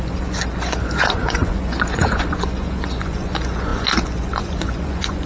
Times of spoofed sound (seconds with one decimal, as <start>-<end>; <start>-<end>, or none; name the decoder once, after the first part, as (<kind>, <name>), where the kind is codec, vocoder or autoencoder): 0.0-5.3 (vocoder, Vocos)